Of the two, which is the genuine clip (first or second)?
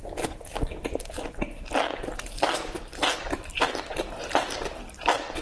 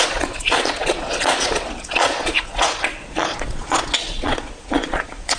first